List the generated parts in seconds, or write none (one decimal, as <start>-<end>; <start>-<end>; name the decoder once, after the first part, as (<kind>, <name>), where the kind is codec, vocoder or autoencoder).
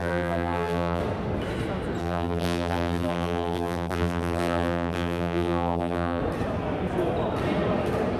0.0-1.0 (vocoder, BigVGAN v2); 2.0-6.2